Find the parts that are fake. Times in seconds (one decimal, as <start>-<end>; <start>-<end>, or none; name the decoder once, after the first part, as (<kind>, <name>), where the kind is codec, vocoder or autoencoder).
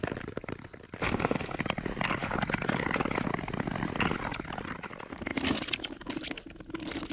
1.0-1.6 (codec, SNAC)